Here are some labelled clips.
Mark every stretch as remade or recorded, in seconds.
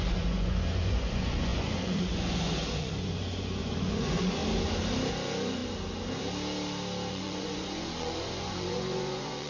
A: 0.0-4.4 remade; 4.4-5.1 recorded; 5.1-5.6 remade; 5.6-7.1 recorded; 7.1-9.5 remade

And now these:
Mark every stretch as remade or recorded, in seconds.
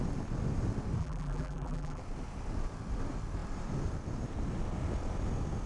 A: 0.0-1.0 recorded; 1.0-2.0 remade; 2.0-5.7 recorded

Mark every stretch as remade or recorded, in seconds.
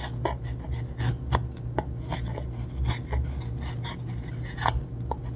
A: 0.0-5.4 recorded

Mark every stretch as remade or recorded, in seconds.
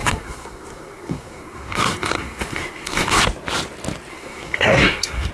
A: 0.0-3.2 remade; 3.2-4.1 recorded; 4.1-5.3 remade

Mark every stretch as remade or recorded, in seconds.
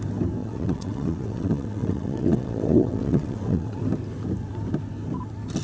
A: 0.0-0.4 recorded; 0.4-3.8 remade; 3.8-5.6 recorded